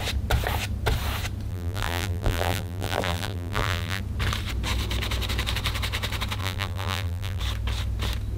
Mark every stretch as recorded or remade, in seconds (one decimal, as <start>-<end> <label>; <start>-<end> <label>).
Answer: 0.0-1.5 recorded; 1.5-4.0 remade; 4.0-6.4 recorded; 6.4-7.4 remade; 7.4-8.4 recorded